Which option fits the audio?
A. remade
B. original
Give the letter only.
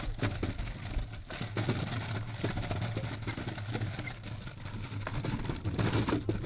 B